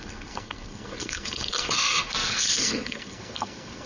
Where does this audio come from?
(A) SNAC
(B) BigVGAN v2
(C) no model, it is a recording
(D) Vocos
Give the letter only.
A